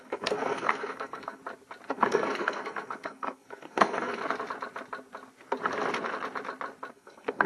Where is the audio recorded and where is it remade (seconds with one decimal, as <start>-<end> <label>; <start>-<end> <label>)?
0.0-1.4 remade; 1.4-1.9 recorded; 1.9-4.2 remade; 4.2-6.9 recorded; 6.9-7.5 remade